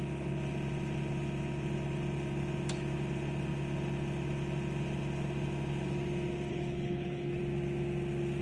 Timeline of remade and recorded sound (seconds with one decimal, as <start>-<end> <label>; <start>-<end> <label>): 0.0-6.5 recorded; 6.5-7.4 remade; 7.4-8.4 recorded